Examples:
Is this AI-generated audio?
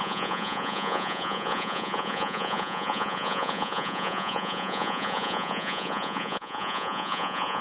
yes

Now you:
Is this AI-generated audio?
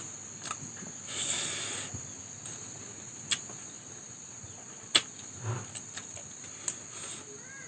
no